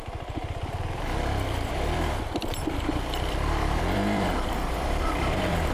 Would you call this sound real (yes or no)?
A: no